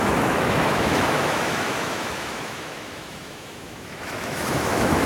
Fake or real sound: fake